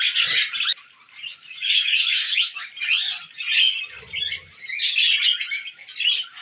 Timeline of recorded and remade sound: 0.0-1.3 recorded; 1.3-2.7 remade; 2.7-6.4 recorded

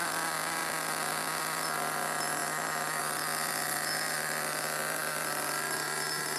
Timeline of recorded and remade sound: 0.0-6.4 recorded

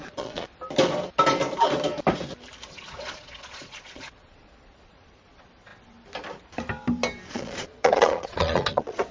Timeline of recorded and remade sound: 0.0-0.5 remade; 0.5-2.7 recorded; 2.7-5.7 remade; 5.7-7.3 recorded; 7.3-9.1 remade

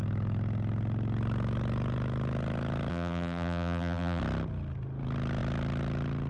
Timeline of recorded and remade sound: 0.0-2.9 recorded; 2.9-4.2 remade; 4.2-6.3 recorded

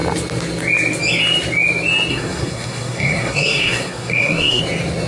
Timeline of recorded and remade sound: 0.0-2.1 recorded; 2.1-4.6 remade; 4.6-5.1 recorded

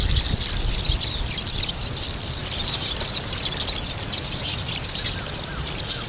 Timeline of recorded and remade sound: 0.0-6.1 recorded

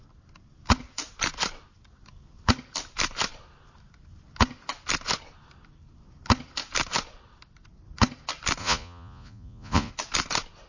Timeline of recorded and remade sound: 0.0-8.6 recorded; 8.6-9.9 remade; 9.9-10.7 recorded